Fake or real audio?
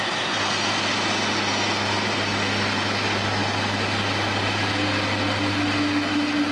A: real